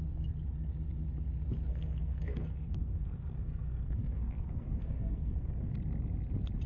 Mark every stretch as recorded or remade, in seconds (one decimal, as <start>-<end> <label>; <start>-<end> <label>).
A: 0.0-1.7 recorded; 1.7-5.7 remade; 5.7-6.7 recorded